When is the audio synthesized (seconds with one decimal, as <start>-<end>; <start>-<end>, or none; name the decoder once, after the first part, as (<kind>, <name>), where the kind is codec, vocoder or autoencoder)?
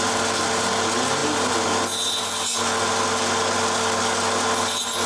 none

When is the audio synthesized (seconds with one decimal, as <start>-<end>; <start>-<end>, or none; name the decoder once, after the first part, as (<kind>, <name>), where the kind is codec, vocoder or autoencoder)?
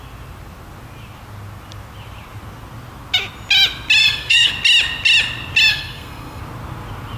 4.0-4.5 (codec, SNAC); 5.7-6.4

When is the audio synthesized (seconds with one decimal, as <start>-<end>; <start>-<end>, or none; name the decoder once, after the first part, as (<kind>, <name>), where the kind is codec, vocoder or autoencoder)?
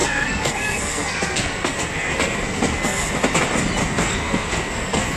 0.0-3.1 (codec, SNAC); 3.8-5.2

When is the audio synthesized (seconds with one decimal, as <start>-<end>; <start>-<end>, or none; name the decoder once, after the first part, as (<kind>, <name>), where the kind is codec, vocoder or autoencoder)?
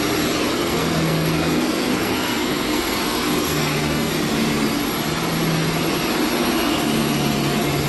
0.5-4.1 (codec, SNAC)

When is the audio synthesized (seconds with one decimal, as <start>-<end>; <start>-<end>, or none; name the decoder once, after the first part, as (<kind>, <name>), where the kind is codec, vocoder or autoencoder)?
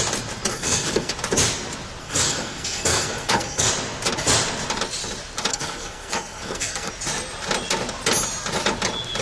0.5-1.1 (codec, SNAC); 2.0-3.7; 5.5-6.9